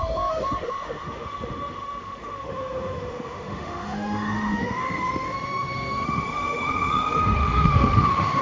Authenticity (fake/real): fake